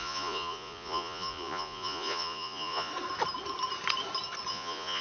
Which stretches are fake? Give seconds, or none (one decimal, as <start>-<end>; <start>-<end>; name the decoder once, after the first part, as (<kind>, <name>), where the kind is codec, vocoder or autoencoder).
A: 0.0-2.9 (vocoder, Vocos); 4.5-5.0